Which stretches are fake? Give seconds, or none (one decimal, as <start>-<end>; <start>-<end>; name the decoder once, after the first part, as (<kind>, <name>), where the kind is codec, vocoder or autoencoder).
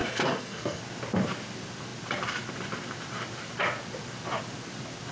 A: 0.0-0.8 (codec, SNAC)